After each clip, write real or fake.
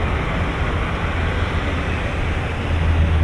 real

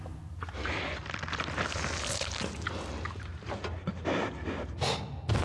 real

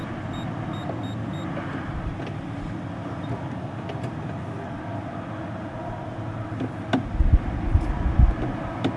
real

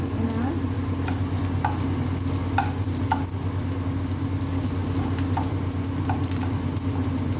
real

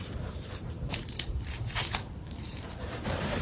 fake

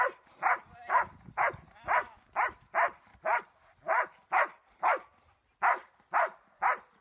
real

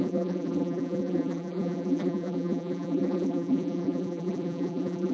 fake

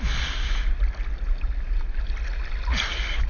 real